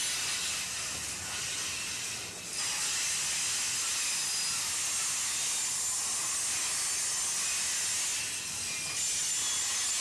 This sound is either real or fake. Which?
real